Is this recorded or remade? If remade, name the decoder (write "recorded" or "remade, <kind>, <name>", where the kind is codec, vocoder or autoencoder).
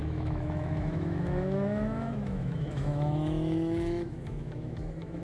remade, autoencoder, DAC-VAE